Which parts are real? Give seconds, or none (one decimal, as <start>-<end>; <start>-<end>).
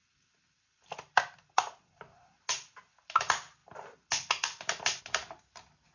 0.0-5.9